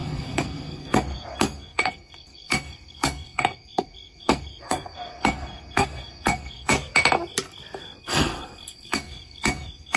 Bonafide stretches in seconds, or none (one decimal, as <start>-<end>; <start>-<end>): 6.7-7.8